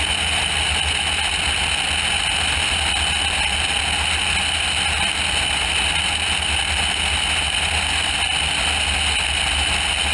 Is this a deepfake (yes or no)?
no